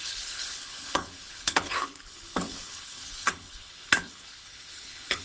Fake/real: fake